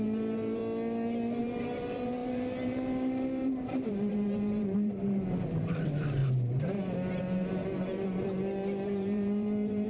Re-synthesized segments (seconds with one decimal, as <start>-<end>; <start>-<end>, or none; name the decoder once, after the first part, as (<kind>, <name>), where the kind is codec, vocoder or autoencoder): 0.0-0.6 (vocoder, BigVGAN v2); 1.4-6.2; 7.1-9.9